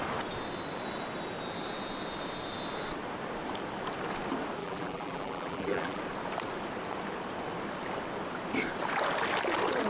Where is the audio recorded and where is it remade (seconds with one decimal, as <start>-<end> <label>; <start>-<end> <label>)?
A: 0.0-4.6 recorded; 4.6-6.0 remade; 6.0-9.9 recorded